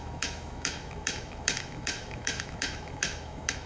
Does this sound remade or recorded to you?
remade